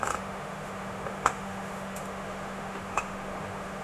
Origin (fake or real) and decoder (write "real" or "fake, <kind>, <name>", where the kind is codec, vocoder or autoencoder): fake, autoencoder, DAC-VAE